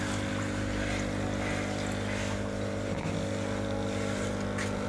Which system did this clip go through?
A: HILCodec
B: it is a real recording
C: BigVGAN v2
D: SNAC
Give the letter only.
B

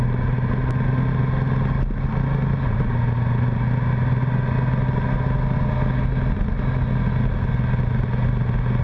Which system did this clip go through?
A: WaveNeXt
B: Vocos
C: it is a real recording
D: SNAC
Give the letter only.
C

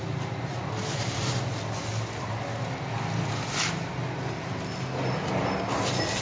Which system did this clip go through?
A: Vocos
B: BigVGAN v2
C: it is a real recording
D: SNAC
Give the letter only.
C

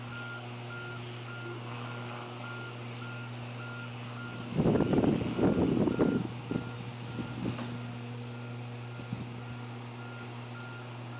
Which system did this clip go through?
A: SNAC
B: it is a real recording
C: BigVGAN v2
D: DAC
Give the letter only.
B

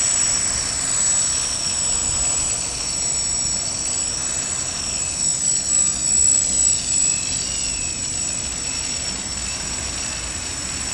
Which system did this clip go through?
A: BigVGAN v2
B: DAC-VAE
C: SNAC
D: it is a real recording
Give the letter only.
D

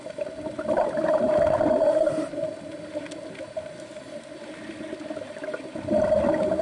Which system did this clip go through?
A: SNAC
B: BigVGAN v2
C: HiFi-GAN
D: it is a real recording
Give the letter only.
D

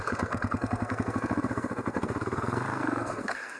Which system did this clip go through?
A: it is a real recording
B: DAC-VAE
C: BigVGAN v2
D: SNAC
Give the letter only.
D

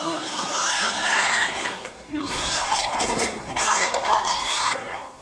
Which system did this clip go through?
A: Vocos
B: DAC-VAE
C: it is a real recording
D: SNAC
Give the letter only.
D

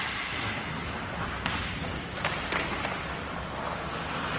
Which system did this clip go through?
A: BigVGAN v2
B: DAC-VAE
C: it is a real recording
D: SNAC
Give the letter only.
C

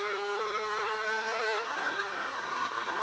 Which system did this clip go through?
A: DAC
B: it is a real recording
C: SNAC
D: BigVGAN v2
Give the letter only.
C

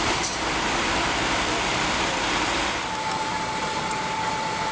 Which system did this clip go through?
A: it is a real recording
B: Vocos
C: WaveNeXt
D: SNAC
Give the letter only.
A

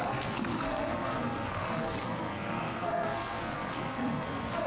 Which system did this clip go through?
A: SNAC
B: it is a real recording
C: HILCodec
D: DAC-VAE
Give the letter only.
A